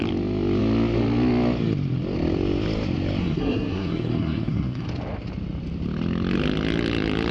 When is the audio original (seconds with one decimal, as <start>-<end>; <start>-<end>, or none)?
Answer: 0.0-3.2; 4.9-7.3